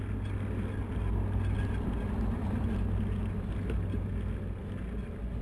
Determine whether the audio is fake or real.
real